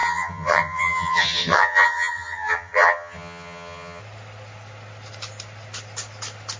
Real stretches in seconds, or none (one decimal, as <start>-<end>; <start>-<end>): 4.0-6.6